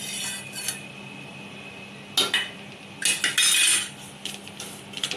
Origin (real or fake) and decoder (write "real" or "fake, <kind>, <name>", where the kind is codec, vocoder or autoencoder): real